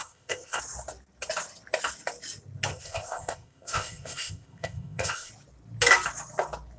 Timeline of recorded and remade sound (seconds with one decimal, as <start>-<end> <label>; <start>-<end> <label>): 0.0-0.6 remade; 0.6-2.7 recorded; 2.7-5.3 remade; 5.3-6.8 recorded